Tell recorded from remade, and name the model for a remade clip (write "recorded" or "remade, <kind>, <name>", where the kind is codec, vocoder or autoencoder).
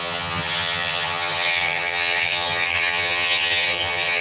remade, vocoder, HiFi-GAN